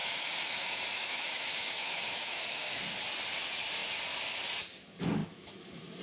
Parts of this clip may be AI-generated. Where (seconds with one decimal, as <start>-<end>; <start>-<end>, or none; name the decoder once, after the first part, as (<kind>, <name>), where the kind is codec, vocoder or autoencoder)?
0.0-2.8 (autoencoder, DAC-VAE); 5.2-6.0